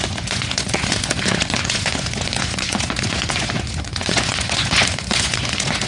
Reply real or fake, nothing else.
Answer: fake